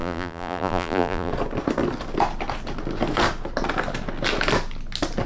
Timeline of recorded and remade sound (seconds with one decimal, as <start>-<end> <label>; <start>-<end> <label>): 0.0-1.3 remade; 1.3-5.3 recorded